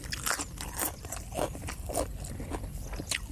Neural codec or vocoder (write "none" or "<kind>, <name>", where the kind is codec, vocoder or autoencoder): none